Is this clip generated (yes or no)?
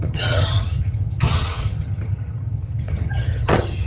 yes